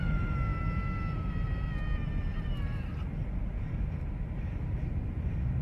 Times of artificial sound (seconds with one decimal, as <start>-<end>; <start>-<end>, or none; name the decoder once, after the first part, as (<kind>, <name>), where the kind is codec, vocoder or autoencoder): none